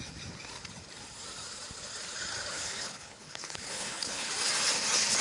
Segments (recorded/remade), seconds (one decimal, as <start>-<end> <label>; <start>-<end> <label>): 0.0-2.5 recorded; 2.5-4.3 remade; 4.3-5.2 recorded